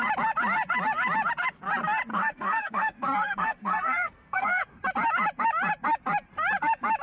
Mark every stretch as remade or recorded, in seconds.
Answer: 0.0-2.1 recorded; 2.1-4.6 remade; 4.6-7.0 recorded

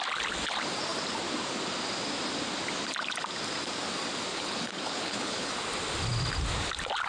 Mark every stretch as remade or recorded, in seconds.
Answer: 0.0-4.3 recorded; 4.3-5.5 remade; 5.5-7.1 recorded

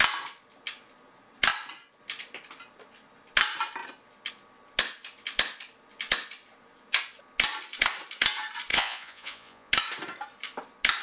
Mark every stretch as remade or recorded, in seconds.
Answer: 0.0-8.7 recorded; 8.7-9.7 remade; 9.7-11.0 recorded

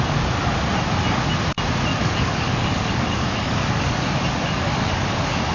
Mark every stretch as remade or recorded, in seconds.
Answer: 0.0-1.9 recorded; 1.9-5.5 remade

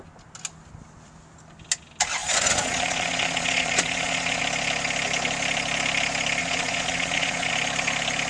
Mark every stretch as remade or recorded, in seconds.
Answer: 0.0-2.2 recorded; 2.2-4.4 remade; 4.4-6.4 recorded; 6.4-7.5 remade; 7.5-8.3 recorded

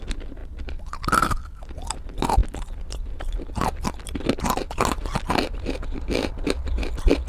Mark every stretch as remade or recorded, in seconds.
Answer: 0.0-7.3 recorded